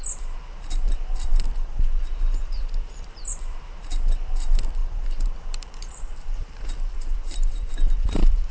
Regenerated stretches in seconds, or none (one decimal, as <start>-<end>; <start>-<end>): 0.0-8.5